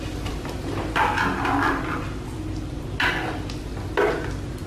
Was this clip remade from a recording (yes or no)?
no